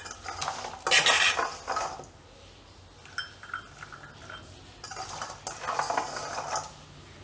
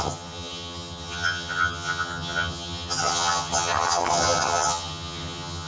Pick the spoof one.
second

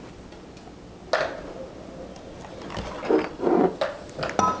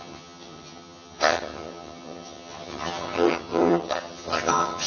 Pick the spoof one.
second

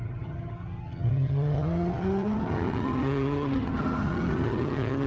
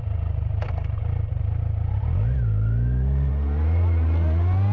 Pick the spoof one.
first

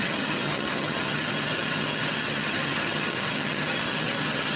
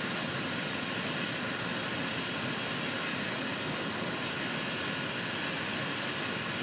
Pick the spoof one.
first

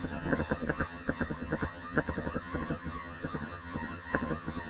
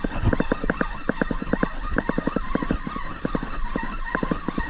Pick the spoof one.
first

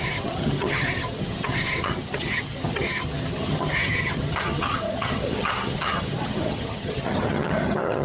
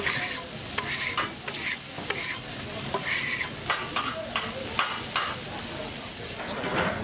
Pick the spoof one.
first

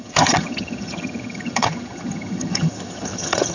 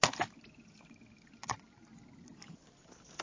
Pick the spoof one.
first